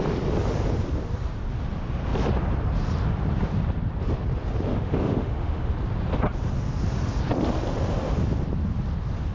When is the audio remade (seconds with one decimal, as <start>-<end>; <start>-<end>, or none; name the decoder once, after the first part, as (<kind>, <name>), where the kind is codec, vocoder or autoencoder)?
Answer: 4.7-5.7 (autoencoder, DAC-VAE)